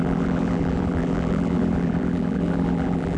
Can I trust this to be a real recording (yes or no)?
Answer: no